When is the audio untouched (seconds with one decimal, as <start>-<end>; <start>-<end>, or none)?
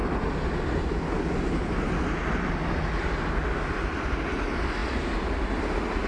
0.0-6.1